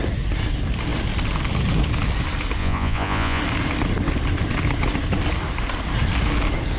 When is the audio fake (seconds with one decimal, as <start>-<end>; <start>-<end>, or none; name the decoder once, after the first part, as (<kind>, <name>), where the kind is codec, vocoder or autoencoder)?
2.6-3.4 (vocoder, Vocos)